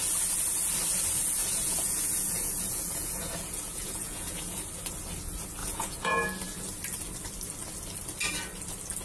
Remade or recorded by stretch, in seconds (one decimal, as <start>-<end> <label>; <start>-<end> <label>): 0.0-1.4 recorded; 1.4-4.7 remade; 4.7-5.6 recorded; 5.6-6.1 remade; 6.1-9.0 recorded